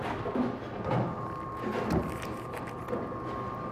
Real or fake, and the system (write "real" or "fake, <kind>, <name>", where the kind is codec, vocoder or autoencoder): real